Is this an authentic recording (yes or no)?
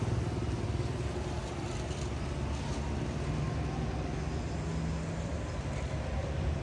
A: yes